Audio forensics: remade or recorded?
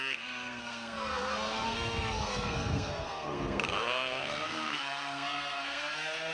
remade